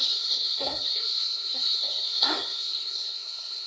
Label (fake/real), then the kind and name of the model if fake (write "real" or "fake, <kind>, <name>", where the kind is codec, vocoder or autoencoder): fake, codec, SNAC